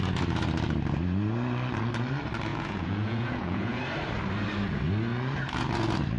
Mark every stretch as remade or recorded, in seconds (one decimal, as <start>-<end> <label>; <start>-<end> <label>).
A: 0.0-2.5 recorded; 2.5-3.8 remade; 3.8-6.2 recorded